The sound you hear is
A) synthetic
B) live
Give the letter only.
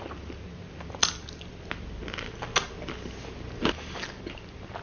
B